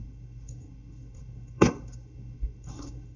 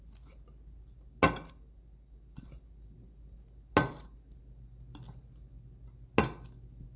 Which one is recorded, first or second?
second